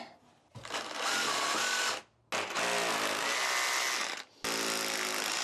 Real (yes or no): yes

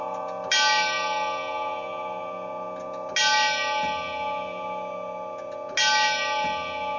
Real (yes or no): yes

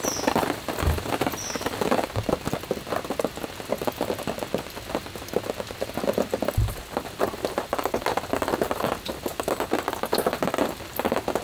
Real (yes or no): yes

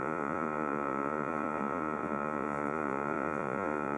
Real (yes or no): no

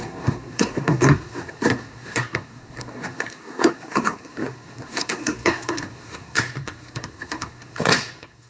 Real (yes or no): no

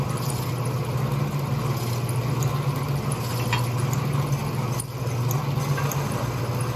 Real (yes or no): yes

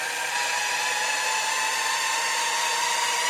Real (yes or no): yes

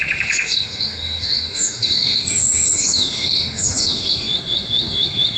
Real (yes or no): no